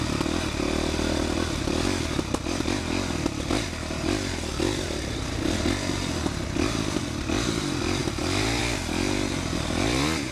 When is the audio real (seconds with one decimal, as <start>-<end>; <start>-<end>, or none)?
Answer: 0.0-10.3